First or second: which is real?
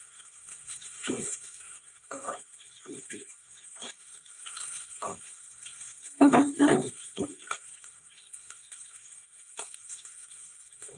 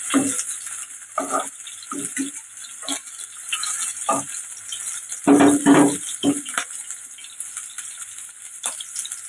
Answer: second